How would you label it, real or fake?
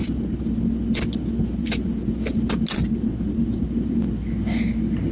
real